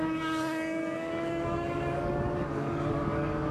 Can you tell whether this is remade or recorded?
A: remade